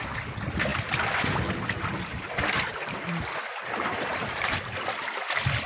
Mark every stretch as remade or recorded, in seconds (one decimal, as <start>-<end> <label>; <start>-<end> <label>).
0.0-0.7 recorded; 0.7-1.3 remade; 1.3-2.1 recorded; 2.1-5.7 remade